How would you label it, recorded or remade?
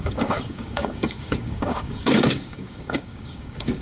remade